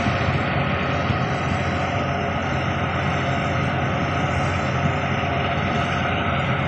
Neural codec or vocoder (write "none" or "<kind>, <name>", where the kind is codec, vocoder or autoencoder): none